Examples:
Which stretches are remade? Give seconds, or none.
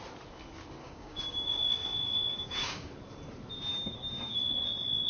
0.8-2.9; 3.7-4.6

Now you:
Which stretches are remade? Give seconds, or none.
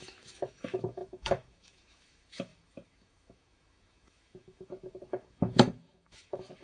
0.0-6.6